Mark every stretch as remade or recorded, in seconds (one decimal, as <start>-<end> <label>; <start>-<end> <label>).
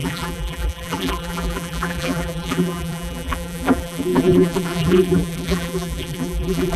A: 0.0-6.8 remade